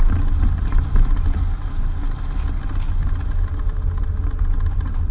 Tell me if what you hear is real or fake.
real